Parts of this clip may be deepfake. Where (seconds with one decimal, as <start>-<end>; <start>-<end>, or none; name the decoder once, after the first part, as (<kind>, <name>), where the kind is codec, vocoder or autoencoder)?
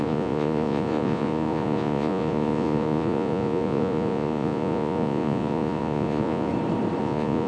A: 0.0-6.5 (vocoder, Vocos); 7.0-7.5